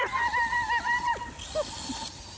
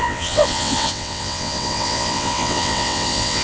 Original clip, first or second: first